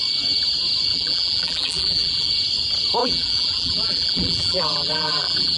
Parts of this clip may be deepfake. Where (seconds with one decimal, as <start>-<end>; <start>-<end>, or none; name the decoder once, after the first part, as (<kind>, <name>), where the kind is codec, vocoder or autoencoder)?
0.9-2.3 (vocoder, BigVGAN v2); 3.0-5.6